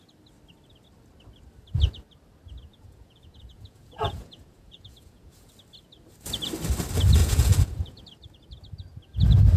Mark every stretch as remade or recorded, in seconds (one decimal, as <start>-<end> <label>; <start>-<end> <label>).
0.0-2.7 recorded; 2.7-5.5 remade; 5.5-7.2 recorded; 7.2-8.0 remade; 8.0-9.6 recorded